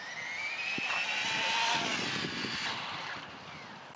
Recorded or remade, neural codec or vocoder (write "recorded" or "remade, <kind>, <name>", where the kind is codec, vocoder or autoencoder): remade, vocoder, BigVGAN v2